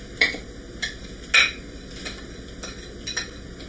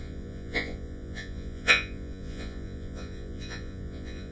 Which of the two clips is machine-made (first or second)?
second